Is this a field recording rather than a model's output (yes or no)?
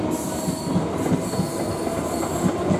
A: yes